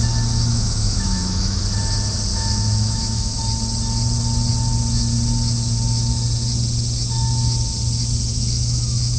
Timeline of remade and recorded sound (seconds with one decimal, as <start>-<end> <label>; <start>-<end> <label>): 0.0-0.5 recorded; 0.5-1.6 remade; 1.6-2.3 recorded; 2.3-3.4 remade; 3.4-8.3 recorded; 8.3-9.2 remade

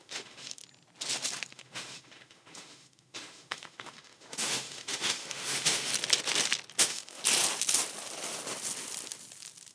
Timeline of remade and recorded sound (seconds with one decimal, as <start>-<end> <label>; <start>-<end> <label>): 0.0-0.6 remade; 0.6-1.5 recorded; 1.5-5.9 remade; 5.9-6.8 recorded; 6.8-7.2 remade; 7.2-9.7 recorded